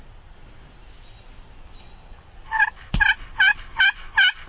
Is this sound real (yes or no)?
yes